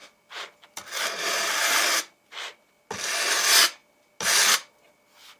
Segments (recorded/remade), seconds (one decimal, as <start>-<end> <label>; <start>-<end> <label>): 0.0-5.4 recorded